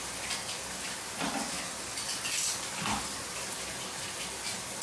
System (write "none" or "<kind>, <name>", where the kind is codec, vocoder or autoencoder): none